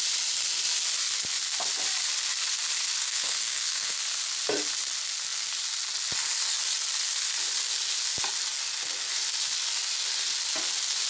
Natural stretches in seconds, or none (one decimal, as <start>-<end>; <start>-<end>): 0.0-3.0; 4.0-11.1